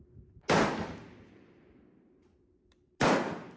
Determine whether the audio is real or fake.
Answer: real